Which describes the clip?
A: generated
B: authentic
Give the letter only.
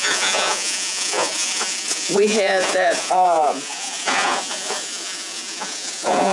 A